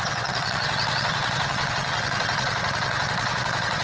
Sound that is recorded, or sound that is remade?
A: remade